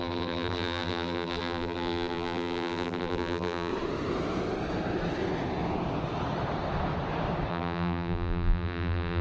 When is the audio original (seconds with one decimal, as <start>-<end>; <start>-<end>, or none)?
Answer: 3.7-7.5